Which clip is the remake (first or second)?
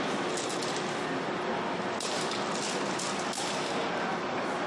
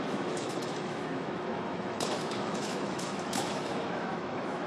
second